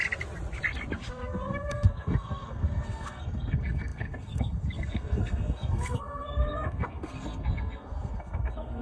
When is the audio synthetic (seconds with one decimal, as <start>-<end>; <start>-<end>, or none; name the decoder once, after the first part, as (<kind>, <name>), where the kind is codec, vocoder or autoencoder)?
1.1-8.8 (codec, SNAC)